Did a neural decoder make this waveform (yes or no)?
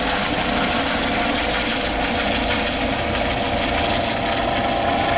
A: no